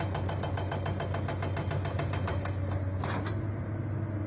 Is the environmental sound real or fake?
real